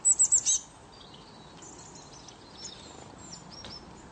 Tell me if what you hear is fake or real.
real